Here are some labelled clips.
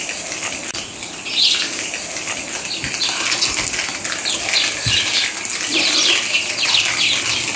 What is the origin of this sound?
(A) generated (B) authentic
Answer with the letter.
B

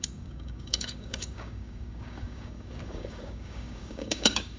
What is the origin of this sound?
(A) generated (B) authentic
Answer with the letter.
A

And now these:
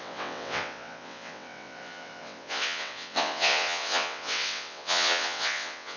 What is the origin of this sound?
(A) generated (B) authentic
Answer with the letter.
A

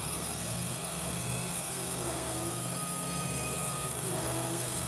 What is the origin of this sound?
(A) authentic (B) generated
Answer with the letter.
B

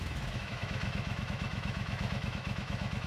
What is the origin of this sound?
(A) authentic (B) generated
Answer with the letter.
B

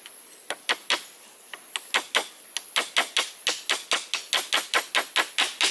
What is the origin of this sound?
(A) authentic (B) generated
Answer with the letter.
A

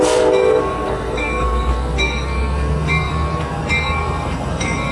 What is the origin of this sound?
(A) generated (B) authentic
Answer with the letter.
A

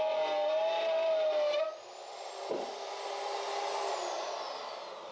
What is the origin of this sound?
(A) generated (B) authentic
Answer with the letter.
B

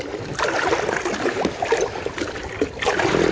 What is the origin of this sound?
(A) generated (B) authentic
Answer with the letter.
B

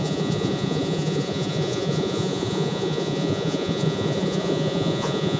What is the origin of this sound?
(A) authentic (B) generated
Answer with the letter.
B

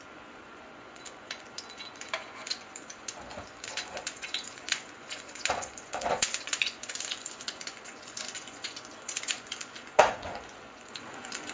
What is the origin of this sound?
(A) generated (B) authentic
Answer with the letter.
A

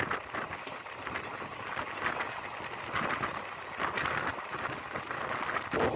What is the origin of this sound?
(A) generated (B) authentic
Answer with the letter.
B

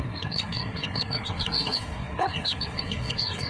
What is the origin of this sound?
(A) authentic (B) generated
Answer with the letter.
B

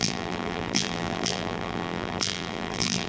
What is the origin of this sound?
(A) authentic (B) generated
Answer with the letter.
B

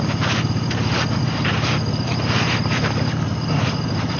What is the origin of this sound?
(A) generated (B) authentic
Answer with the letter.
B